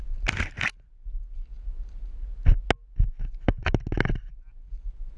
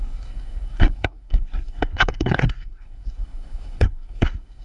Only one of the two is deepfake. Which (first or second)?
second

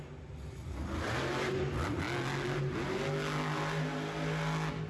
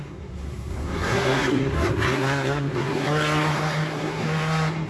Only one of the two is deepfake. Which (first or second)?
second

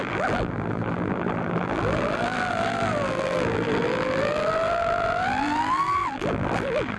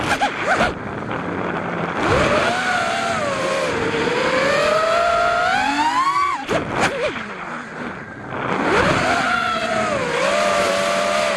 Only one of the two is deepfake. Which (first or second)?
first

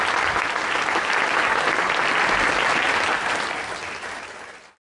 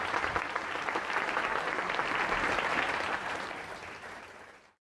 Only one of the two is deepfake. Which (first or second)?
second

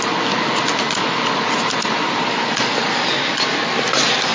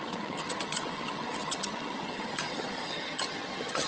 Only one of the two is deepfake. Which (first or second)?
second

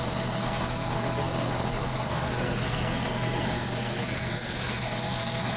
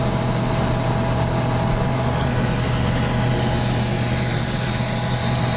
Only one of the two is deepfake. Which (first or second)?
first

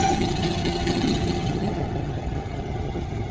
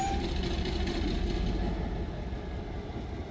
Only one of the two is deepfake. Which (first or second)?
first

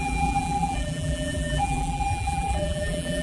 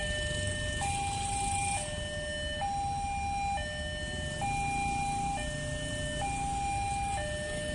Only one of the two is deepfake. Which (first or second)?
first